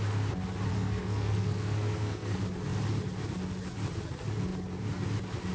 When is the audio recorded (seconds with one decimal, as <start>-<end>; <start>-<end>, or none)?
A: 0.0-0.7; 2.4-5.5